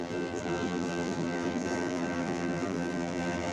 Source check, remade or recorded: remade